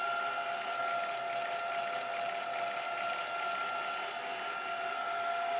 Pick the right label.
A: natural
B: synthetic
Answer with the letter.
A